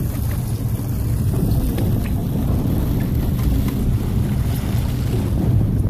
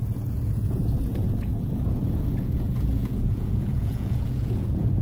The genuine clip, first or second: first